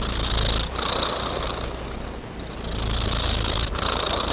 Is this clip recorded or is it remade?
remade